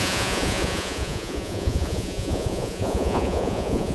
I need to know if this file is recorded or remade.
remade